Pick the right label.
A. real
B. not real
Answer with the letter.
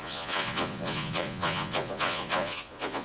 B